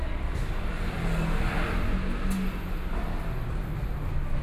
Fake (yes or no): no